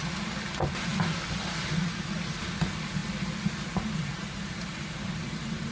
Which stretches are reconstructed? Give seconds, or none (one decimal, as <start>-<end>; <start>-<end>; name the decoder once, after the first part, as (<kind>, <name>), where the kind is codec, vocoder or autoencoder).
none